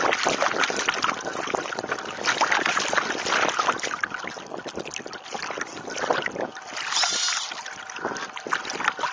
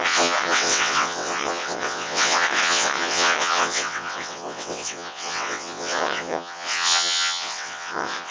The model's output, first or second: second